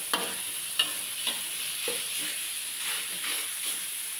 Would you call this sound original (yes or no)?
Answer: yes